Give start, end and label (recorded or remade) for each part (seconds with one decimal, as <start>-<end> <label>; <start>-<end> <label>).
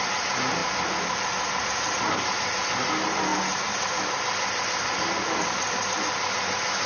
0.0-6.9 recorded